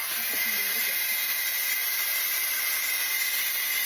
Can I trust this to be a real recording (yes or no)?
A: yes